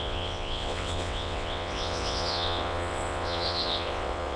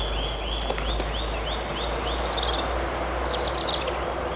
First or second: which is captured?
second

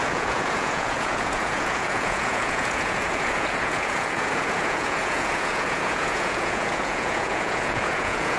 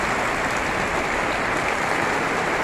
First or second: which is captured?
second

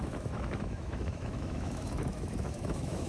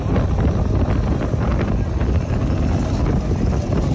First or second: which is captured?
second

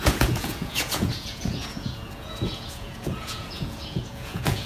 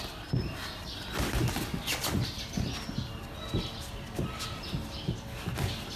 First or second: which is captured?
second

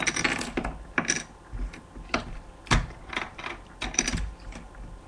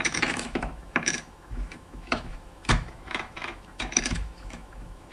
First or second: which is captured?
first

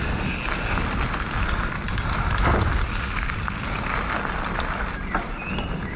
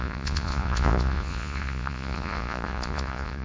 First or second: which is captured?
first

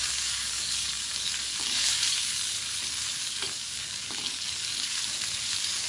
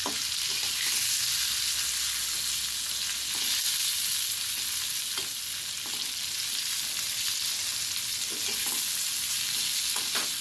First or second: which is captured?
second